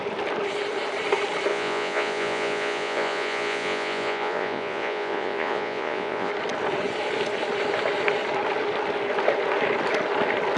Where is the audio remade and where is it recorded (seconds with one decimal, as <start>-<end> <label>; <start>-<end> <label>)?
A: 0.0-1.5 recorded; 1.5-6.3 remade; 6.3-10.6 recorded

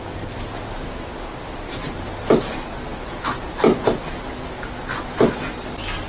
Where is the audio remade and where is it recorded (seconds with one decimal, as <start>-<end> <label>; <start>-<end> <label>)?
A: 0.0-6.1 recorded

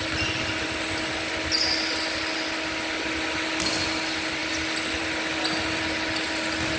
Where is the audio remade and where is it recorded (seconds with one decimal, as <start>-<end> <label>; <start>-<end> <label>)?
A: 0.0-6.8 recorded

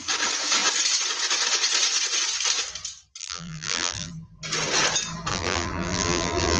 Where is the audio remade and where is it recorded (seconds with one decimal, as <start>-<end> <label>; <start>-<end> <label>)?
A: 0.0-3.2 recorded; 3.2-4.1 remade; 4.1-5.3 recorded; 5.3-6.6 remade

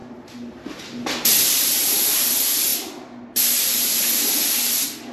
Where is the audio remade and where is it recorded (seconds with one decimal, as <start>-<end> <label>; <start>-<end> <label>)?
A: 0.0-2.3 remade; 2.3-5.1 recorded

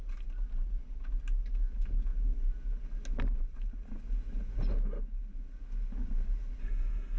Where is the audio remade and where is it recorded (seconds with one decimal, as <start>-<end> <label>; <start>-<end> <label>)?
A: 0.0-6.6 recorded; 6.6-7.2 remade

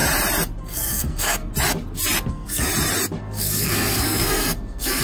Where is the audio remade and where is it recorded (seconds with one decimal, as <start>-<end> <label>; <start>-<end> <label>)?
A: 0.0-0.6 recorded; 0.6-1.5 remade; 1.5-2.3 recorded; 2.3-2.7 remade; 2.7-3.2 recorded; 3.2-5.0 remade